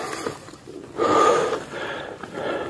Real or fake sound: real